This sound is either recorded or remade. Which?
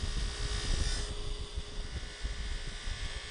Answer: recorded